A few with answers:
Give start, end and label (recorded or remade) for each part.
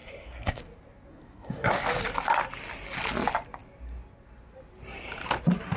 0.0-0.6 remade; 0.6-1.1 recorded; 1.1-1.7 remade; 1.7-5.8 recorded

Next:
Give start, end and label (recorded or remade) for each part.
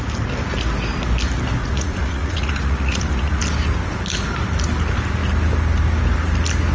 0.0-1.6 recorded; 1.6-3.4 remade; 3.4-6.7 recorded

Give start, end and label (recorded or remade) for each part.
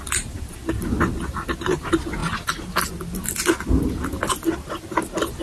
0.0-5.4 recorded